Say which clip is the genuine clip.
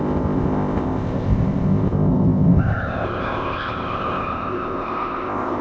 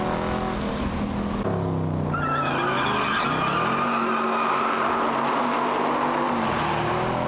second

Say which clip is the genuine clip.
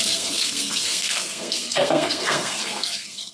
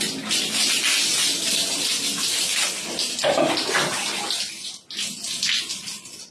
second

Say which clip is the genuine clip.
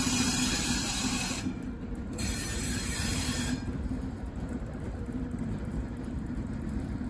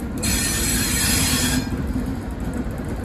second